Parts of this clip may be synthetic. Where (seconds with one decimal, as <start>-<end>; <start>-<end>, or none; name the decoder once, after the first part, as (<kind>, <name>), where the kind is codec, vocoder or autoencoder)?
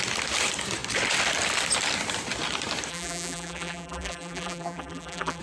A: 2.9-5.4 (vocoder, BigVGAN v2)